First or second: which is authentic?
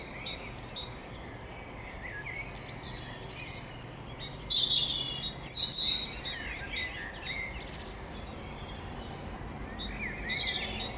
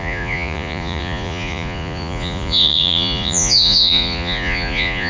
first